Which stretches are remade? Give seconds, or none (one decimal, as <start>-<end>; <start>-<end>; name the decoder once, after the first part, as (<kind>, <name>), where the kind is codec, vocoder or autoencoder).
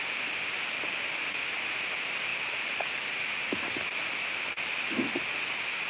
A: none